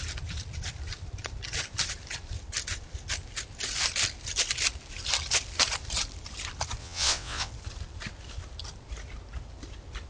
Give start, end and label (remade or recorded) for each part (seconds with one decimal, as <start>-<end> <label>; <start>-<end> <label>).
0.0-6.8 recorded; 6.8-7.5 remade; 7.5-10.1 recorded

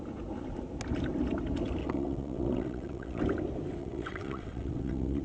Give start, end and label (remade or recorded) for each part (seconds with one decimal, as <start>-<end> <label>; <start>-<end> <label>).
0.0-1.8 recorded; 1.8-3.2 remade; 3.2-3.8 recorded; 3.8-5.2 remade

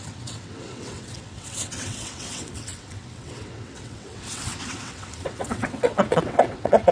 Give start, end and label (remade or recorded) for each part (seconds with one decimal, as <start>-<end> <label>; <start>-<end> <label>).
0.0-6.9 remade

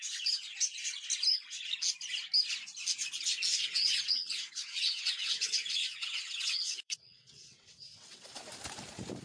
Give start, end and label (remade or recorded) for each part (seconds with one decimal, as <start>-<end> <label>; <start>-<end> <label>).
0.0-3.5 recorded; 3.5-8.4 remade; 8.4-9.2 recorded

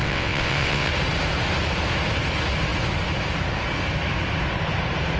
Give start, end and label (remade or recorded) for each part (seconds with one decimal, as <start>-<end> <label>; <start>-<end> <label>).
0.0-0.9 remade; 0.9-5.2 recorded

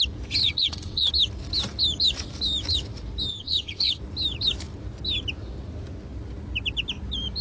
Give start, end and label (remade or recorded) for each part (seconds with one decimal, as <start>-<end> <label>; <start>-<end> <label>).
0.0-0.4 recorded; 0.4-1.1 remade; 1.1-3.3 recorded; 3.3-4.0 remade; 4.0-7.4 recorded